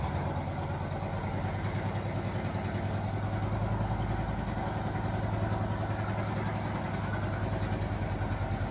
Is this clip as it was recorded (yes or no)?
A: yes